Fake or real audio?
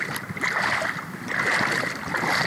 real